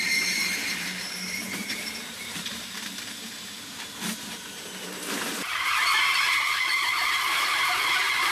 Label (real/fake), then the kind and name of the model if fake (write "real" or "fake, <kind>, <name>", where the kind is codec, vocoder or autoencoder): fake, vocoder, BigVGAN v2